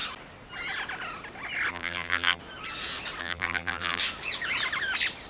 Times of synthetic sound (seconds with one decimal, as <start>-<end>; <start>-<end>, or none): 1.7-2.4; 3.2-4.0